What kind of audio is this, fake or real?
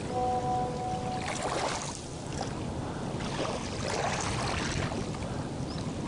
real